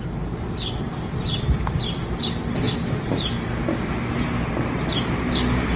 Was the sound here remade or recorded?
recorded